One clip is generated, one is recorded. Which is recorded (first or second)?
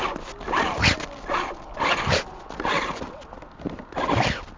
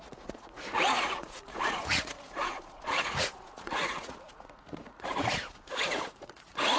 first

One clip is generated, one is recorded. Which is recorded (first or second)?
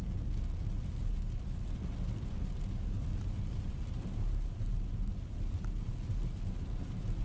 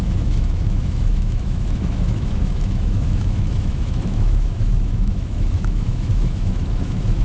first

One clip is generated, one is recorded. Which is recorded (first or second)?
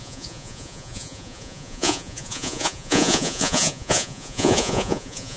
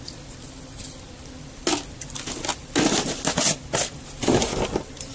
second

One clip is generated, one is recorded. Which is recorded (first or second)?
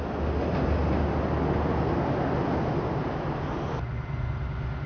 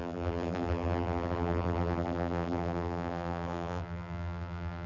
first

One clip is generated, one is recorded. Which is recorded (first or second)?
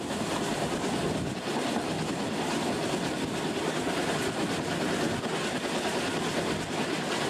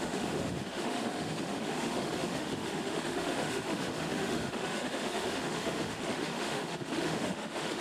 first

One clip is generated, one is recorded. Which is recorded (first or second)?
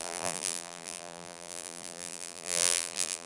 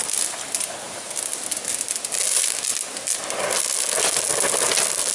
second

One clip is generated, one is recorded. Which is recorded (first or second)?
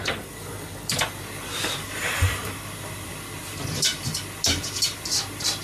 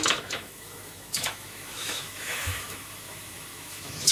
first